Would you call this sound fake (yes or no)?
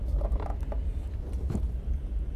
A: no